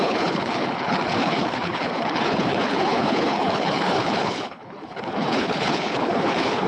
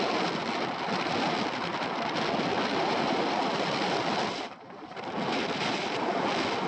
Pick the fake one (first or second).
first